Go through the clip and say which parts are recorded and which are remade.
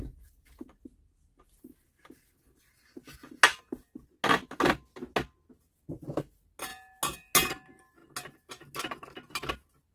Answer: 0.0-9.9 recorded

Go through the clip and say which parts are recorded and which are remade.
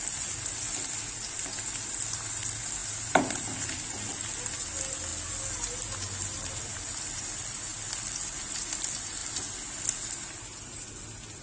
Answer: 0.0-11.4 recorded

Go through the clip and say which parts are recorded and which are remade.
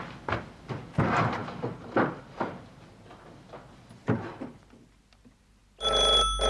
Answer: 0.0-1.4 recorded; 1.4-2.3 remade; 2.3-6.5 recorded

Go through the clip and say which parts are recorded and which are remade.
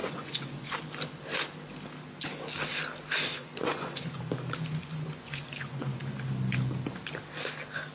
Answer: 0.0-0.7 remade; 0.7-3.4 recorded; 3.4-4.2 remade; 4.2-4.7 recorded; 4.7-6.0 remade; 6.0-7.9 recorded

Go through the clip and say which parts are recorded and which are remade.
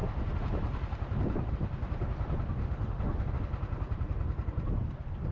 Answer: 0.0-2.6 recorded; 2.6-3.3 remade; 3.3-5.3 recorded